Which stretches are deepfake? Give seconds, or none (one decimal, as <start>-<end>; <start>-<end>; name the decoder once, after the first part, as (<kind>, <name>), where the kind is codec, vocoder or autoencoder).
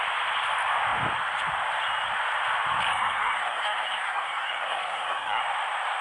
2.9-5.4 (codec, SNAC)